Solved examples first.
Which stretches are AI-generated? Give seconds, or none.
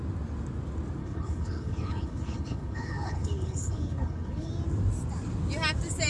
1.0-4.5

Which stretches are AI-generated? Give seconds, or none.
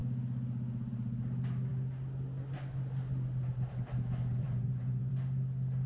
4.3-5.1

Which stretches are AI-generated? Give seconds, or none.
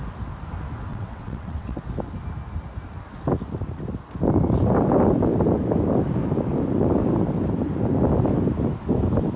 0.9-1.8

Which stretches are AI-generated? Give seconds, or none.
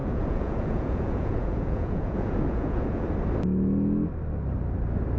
0.0-3.1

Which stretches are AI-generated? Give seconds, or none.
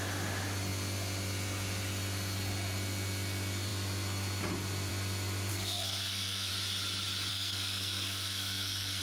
5.5-6.5; 7.3-9.0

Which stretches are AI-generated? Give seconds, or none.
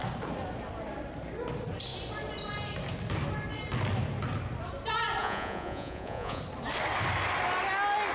5.2-6.4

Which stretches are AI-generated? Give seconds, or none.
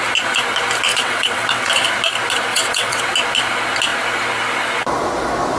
0.9-1.7; 2.5-3.0